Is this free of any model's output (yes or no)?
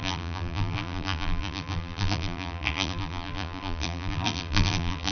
no